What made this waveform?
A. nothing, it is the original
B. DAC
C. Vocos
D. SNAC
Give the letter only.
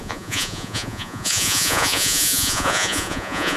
C